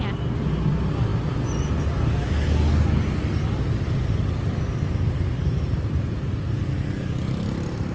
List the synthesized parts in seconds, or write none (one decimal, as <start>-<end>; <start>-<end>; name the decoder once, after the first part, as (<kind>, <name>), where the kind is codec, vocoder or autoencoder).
none